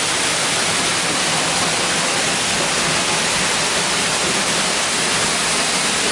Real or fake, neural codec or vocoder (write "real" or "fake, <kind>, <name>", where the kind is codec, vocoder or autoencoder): real